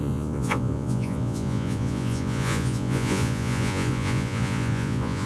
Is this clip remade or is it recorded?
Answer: remade